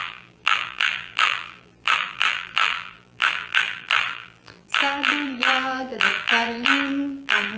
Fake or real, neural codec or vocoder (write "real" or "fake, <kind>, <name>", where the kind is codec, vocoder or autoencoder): fake, vocoder, BigVGAN v2